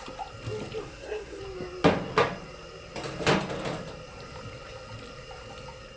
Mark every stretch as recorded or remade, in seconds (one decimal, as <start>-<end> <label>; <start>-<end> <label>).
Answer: 0.0-0.8 recorded; 0.8-1.4 remade; 1.4-6.0 recorded